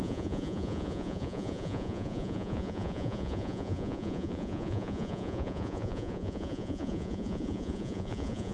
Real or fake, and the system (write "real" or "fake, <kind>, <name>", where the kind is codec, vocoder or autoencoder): fake, vocoder, Vocos